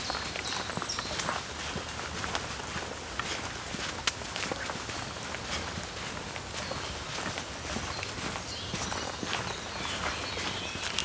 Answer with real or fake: real